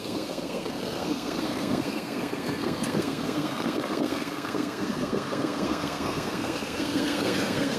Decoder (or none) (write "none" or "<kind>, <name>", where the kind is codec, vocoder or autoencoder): codec, SNAC